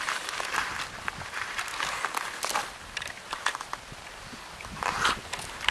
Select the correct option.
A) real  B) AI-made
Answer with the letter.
A